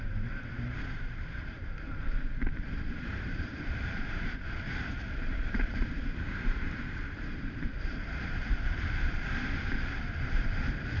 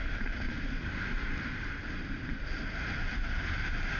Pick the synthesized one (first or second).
first